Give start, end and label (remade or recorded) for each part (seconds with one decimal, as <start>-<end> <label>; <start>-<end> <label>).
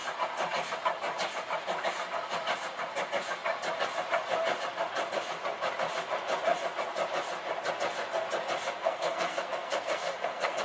0.0-8.8 recorded; 8.8-10.6 remade